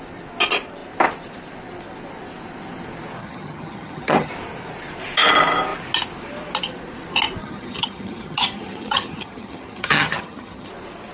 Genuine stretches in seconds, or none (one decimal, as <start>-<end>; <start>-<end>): 0.0-3.2; 4.3-7.4; 10.7-11.1